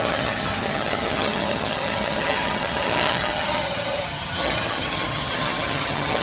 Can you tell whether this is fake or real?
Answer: fake